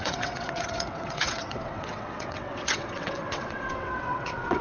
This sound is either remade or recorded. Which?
remade